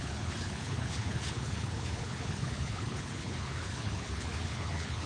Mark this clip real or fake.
fake